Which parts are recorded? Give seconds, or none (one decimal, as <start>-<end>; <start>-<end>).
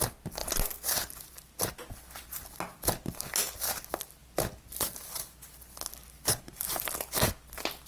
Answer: 0.0-7.9